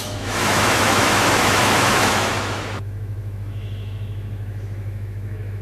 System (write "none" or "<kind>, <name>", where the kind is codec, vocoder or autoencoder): autoencoder, DAC-VAE